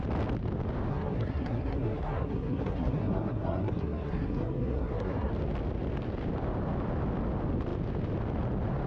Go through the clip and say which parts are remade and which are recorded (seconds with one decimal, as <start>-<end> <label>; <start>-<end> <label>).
0.0-0.9 recorded; 0.9-5.3 remade; 5.3-8.9 recorded